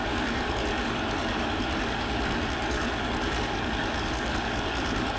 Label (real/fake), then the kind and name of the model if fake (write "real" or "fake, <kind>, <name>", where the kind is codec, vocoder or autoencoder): fake, codec, DAC